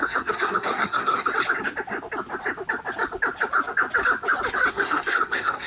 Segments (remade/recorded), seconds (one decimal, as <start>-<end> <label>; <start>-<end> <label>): 0.0-1.3 remade; 1.3-4.7 recorded; 4.7-5.7 remade